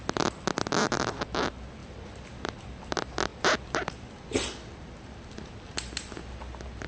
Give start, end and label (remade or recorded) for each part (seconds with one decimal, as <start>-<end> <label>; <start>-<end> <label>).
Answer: 0.0-0.8 recorded; 0.8-1.4 remade; 1.4-1.8 recorded; 1.8-2.8 remade; 2.8-3.3 recorded; 3.3-5.5 remade; 5.5-6.9 recorded